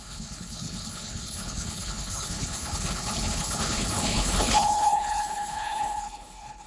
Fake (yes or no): yes